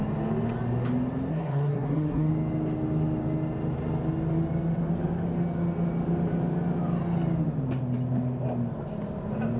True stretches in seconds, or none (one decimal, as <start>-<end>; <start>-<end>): 0.0-1.3; 2.3-9.6